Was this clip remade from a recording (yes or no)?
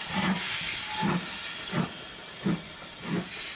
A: no